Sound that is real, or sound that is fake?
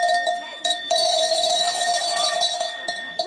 fake